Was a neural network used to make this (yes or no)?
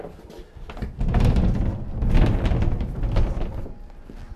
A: no